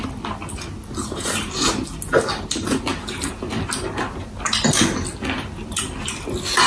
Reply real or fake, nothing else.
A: real